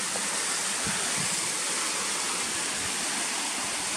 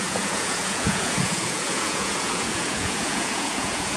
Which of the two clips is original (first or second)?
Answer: first